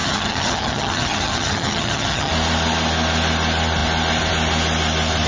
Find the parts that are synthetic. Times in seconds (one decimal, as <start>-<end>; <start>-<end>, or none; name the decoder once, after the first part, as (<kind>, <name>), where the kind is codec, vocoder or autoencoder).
0.0-2.3 (vocoder, HiFi-GAN)